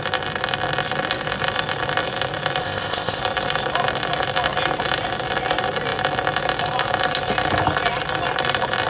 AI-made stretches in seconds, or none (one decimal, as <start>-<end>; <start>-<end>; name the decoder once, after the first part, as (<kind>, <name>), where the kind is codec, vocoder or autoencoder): 2.6-3.2 (codec, ZipCodec)